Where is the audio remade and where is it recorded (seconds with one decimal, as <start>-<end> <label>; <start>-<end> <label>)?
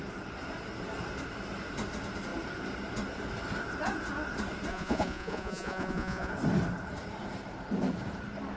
0.0-4.7 recorded; 4.7-6.3 remade; 6.3-8.6 recorded